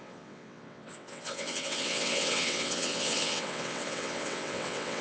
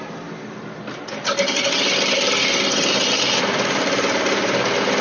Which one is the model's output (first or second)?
first